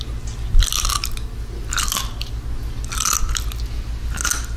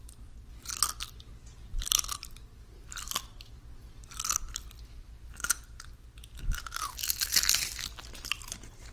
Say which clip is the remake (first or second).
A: second